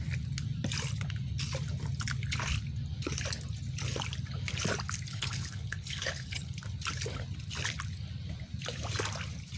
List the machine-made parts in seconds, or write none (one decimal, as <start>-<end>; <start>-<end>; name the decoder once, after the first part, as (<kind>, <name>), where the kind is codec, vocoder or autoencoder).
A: 5.1-6.5 (codec, HILCodec)